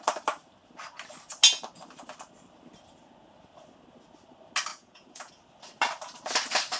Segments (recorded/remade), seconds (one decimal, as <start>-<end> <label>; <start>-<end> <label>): 0.0-4.7 recorded; 4.7-5.3 remade; 5.3-6.8 recorded